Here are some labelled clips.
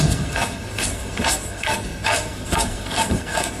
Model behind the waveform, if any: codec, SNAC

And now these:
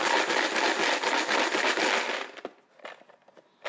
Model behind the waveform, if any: none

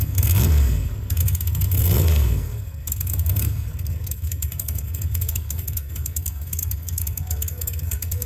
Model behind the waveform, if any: codec, SNAC